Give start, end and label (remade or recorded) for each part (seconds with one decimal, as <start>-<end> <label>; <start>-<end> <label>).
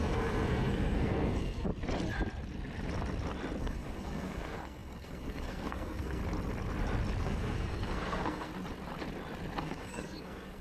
0.0-1.7 remade; 1.7-3.6 recorded; 3.6-6.2 remade; 6.2-7.2 recorded; 7.2-8.5 remade; 8.5-9.6 recorded; 9.6-10.6 remade